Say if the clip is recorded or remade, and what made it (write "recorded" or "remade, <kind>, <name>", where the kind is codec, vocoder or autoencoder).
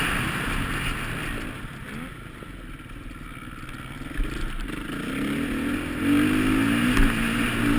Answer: recorded